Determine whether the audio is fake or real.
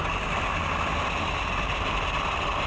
real